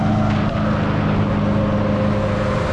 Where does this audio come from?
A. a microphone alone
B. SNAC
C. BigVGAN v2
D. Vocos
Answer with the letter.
A